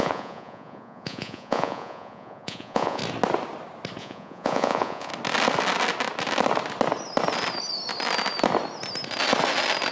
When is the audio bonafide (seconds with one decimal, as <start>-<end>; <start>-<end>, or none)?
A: 3.0-4.0; 5.1-9.9